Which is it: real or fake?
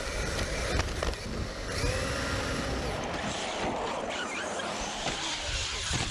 fake